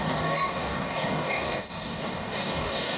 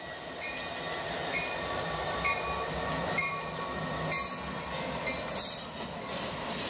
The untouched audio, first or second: second